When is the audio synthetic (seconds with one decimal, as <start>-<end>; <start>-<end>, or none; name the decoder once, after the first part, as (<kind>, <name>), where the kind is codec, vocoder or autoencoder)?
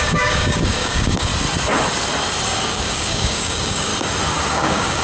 0.0-1.3 (codec, DAC); 2.6-3.9; 4.5-5.0